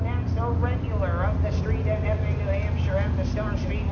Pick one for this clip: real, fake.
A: real